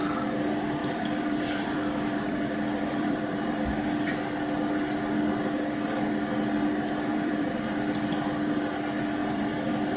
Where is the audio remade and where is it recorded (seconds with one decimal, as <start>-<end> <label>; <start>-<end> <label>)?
0.0-0.8 recorded; 0.8-3.6 remade; 3.6-7.1 recorded; 7.1-7.7 remade; 7.7-9.2 recorded; 9.2-10.0 remade